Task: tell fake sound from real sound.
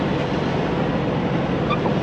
real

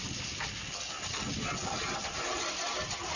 real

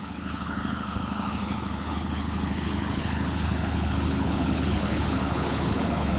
fake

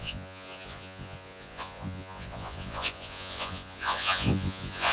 fake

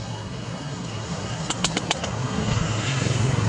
fake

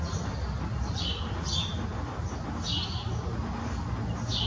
real